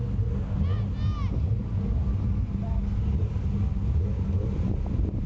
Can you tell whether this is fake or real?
real